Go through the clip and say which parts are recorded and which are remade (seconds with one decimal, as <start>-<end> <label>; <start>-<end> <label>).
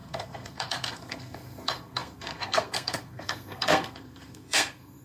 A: 0.0-5.0 remade